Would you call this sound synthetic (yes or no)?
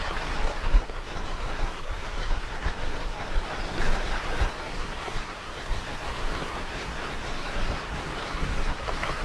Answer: yes